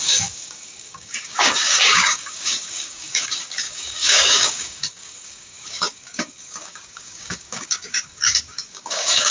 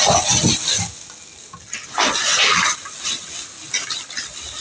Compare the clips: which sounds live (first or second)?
second